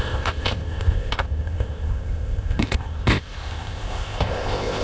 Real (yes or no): no